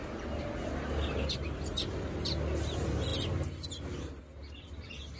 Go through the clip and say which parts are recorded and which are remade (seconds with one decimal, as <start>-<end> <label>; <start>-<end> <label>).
0.0-5.2 recorded